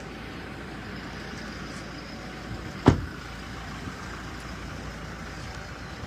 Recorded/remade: recorded